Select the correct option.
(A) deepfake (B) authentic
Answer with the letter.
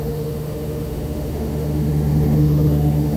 A